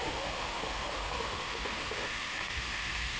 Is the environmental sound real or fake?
fake